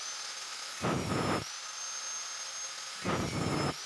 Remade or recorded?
recorded